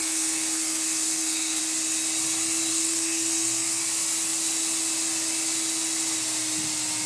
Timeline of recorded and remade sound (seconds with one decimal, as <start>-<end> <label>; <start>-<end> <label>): 0.0-1.6 remade; 1.6-2.7 recorded; 2.7-3.8 remade; 3.8-7.1 recorded